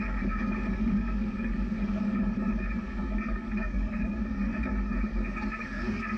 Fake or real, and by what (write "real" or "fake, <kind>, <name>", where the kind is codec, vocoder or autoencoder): fake, codec, DAC